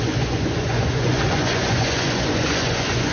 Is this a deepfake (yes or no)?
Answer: yes